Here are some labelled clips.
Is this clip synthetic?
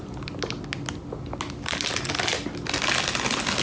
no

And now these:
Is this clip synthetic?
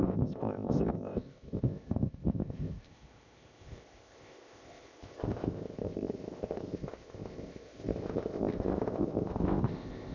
yes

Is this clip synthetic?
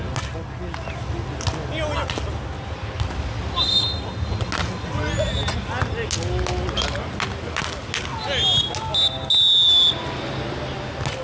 no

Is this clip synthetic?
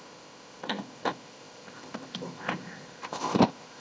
yes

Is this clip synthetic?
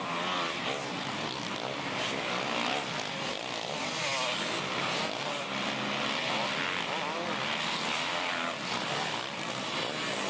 no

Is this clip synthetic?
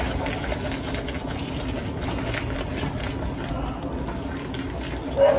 no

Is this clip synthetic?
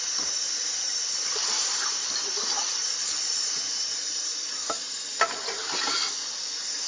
no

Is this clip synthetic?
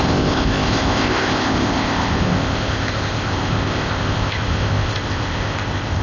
yes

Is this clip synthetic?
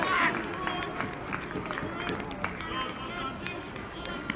no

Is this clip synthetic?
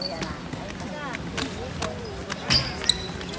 no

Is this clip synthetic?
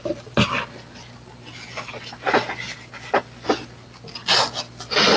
no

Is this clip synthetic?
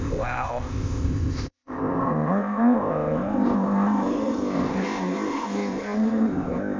yes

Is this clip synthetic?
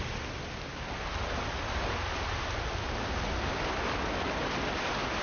no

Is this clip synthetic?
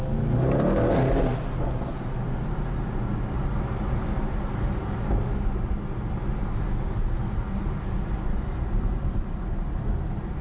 no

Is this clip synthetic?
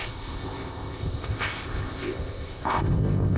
yes